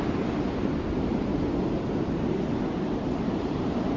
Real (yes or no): yes